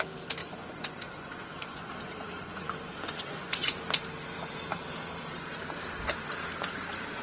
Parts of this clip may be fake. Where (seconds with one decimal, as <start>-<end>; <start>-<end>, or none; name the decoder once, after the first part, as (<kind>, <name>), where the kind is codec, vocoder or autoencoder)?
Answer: 0.4-3.8 (vocoder, Vocos)